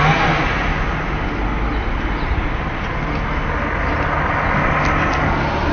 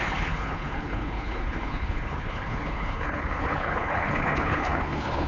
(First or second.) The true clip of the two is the first